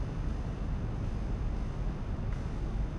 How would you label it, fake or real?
real